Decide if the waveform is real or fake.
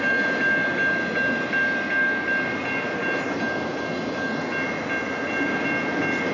real